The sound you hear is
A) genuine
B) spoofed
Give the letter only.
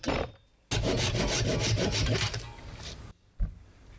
A